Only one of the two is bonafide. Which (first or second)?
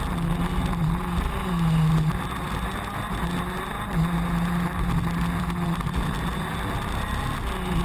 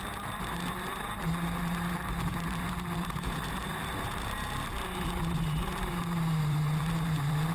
first